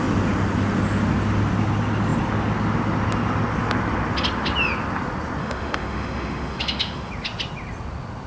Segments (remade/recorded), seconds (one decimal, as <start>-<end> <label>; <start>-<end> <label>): 0.0-5.4 recorded; 5.4-7.1 remade; 7.1-8.3 recorded

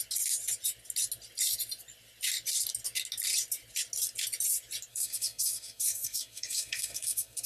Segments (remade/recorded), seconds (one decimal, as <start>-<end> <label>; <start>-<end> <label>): 0.0-4.9 recorded; 4.9-7.5 remade

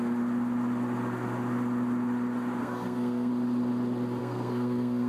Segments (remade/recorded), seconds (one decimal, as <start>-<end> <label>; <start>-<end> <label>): 0.0-2.6 recorded; 2.6-3.3 remade; 3.3-4.2 recorded; 4.2-5.1 remade

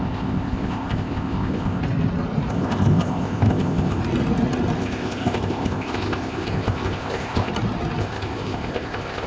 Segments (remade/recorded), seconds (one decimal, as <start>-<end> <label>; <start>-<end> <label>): 0.0-1.8 remade; 1.8-2.5 recorded; 2.5-4.0 remade; 4.0-4.8 recorded; 4.8-7.5 remade; 7.5-8.0 recorded; 8.0-9.3 remade